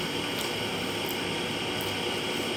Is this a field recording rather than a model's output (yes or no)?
yes